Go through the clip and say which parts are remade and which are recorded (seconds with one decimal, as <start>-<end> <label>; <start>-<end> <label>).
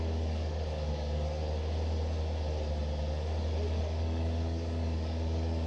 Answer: 0.0-1.4 remade; 1.4-3.8 recorded; 3.8-5.7 remade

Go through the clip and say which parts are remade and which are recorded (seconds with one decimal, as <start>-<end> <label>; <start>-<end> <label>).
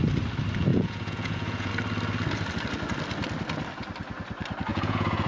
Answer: 0.0-0.7 recorded; 0.7-1.7 remade; 1.7-4.7 recorded; 4.7-5.3 remade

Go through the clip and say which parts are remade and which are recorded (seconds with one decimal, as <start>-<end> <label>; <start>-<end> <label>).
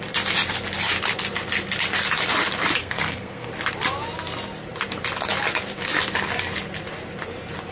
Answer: 0.0-2.8 recorded; 2.8-3.5 remade; 3.5-7.7 recorded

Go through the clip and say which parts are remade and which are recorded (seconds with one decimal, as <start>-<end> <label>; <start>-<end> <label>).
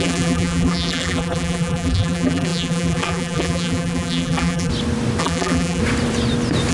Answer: 0.0-4.7 remade; 4.7-5.2 recorded; 5.2-5.8 remade; 5.8-6.7 recorded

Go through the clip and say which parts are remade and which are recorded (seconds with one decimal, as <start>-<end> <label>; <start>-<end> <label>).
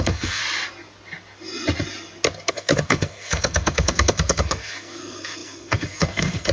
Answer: 0.0-0.4 remade; 0.4-2.5 recorded; 2.5-6.5 remade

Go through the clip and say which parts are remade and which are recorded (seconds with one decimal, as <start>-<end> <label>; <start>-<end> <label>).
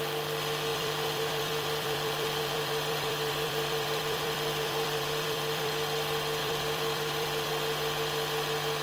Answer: 0.0-0.7 recorded; 0.7-5.7 remade; 5.7-6.4 recorded; 6.4-7.5 remade; 7.5-8.8 recorded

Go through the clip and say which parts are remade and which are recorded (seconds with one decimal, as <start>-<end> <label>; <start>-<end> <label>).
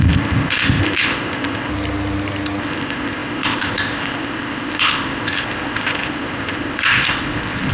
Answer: 0.0-1.7 remade; 1.7-2.6 recorded; 2.6-7.7 remade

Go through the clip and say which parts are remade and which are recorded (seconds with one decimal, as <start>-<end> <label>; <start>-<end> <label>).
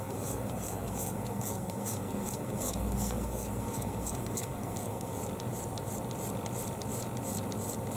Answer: 0.0-5.2 remade; 5.2-8.0 recorded